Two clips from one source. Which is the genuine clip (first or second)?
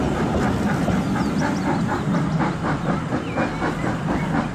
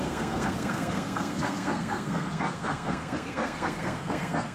first